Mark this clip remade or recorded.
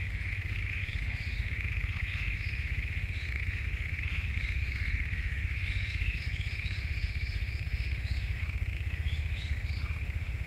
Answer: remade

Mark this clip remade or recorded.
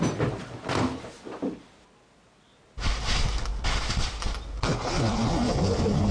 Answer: recorded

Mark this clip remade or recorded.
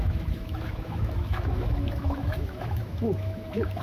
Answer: remade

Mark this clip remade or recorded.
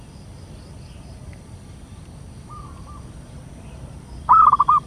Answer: recorded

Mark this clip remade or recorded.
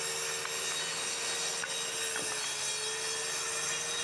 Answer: recorded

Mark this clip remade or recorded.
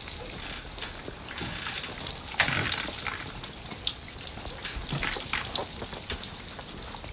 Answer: recorded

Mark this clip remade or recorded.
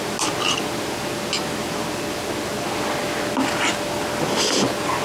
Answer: recorded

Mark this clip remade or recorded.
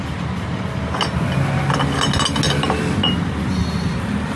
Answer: recorded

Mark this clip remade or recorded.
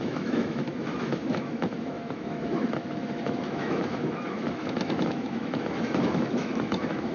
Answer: remade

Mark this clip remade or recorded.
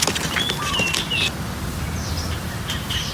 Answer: recorded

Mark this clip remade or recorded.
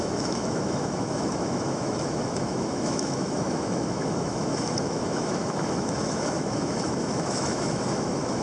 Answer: remade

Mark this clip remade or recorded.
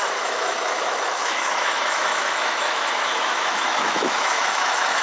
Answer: remade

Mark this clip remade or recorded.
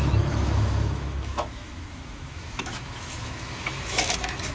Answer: remade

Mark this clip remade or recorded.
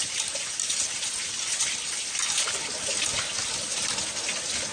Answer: recorded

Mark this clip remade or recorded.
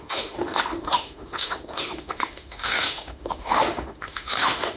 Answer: remade